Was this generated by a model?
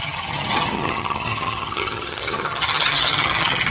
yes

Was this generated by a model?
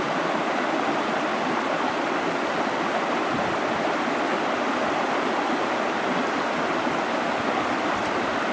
no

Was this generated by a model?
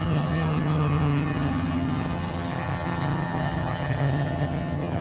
yes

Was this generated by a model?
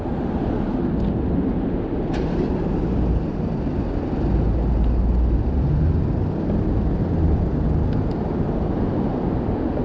no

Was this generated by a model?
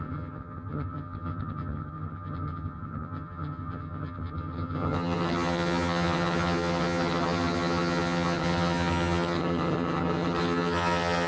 yes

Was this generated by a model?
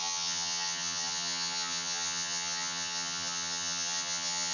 yes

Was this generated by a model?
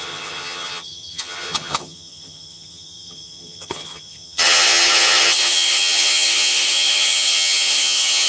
yes